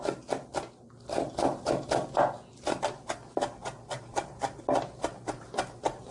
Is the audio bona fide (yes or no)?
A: yes